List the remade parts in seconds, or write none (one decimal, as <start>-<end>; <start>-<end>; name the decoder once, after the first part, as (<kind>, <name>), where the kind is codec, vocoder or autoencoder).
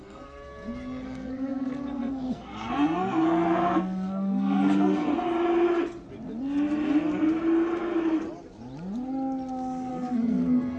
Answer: 0.0-5.1 (codec, SNAC); 9.9-10.8